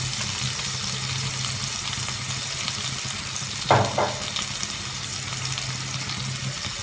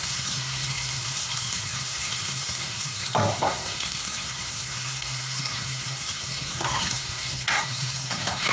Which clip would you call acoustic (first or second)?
first